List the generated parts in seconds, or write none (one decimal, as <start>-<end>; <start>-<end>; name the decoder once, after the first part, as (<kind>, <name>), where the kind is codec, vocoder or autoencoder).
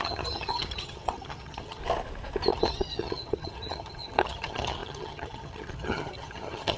0.0-1.8 (vocoder, HiFi-GAN); 2.5-6.8